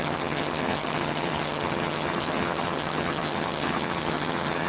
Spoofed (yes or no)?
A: yes